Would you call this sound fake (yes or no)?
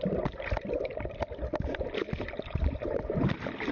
no